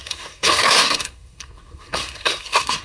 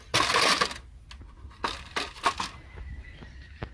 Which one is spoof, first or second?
first